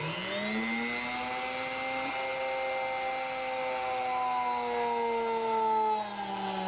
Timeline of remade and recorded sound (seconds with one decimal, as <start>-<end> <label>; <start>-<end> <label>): 0.0-6.7 recorded